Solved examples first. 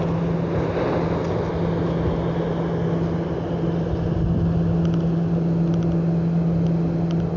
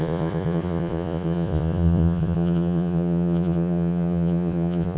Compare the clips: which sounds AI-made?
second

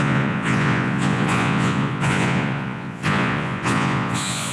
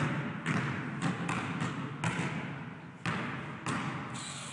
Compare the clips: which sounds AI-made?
first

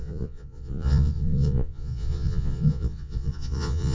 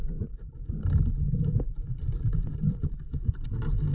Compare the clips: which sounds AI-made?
first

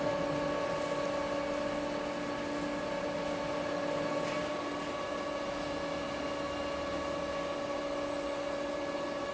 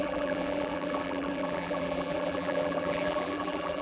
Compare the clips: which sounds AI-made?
second